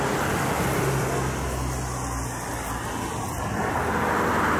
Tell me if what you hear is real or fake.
real